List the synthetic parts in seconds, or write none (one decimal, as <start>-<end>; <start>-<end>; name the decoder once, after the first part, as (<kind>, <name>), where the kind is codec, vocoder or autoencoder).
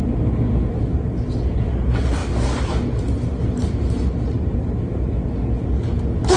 none